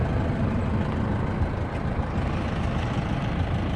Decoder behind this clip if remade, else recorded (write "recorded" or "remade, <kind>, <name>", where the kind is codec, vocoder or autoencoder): recorded